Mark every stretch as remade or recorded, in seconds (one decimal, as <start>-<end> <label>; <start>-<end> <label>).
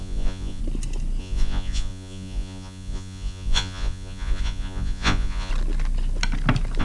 0.0-0.6 remade; 0.6-1.2 recorded; 1.2-5.5 remade; 5.5-6.8 recorded